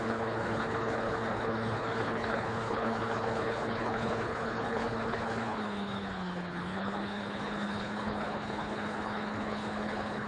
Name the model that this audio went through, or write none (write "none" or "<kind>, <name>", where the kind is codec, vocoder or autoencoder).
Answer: codec, HILCodec